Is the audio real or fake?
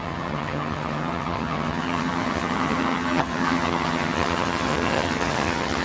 fake